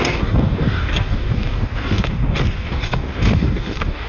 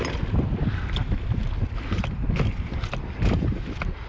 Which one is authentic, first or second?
second